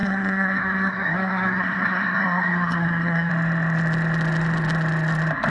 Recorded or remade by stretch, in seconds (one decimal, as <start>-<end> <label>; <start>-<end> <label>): 0.0-3.3 remade; 3.3-5.5 recorded